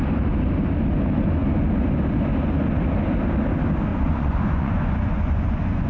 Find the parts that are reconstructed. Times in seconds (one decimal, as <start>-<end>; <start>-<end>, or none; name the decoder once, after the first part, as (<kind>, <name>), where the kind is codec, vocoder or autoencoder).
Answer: 3.9-5.9 (vocoder, Vocos)